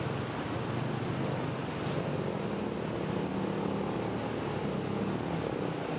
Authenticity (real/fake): real